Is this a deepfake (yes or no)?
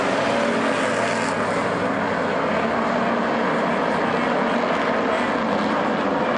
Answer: no